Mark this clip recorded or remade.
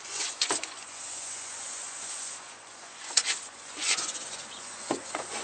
remade